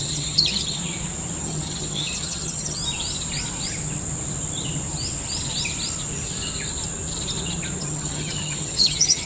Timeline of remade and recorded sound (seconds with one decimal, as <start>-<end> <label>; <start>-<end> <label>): 0.0-0.8 remade; 0.8-1.4 recorded; 1.4-2.8 remade; 2.8-7.8 recorded; 7.8-9.3 remade